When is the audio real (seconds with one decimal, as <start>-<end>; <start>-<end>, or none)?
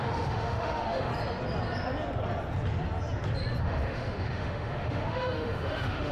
1.1-3.6